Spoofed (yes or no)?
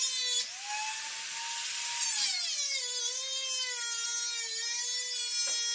no